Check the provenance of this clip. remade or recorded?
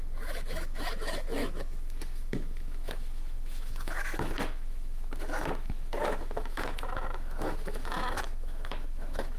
remade